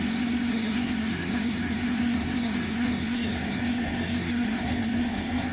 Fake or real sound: fake